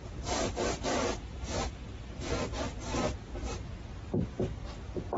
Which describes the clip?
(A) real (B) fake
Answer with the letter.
A